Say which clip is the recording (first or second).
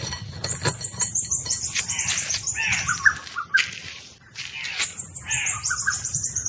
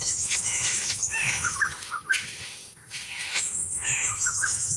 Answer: first